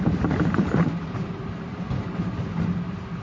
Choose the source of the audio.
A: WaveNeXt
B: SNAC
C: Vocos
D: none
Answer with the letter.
D